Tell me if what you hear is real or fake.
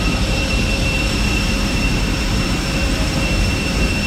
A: fake